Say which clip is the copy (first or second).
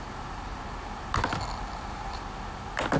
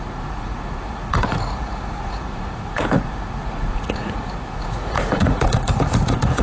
second